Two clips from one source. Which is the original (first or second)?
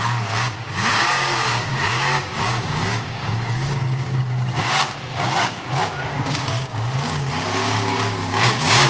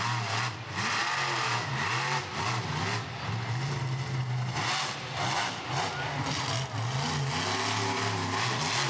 second